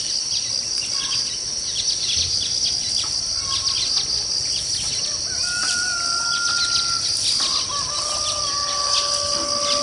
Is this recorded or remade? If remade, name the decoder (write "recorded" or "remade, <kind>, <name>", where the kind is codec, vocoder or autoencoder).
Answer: recorded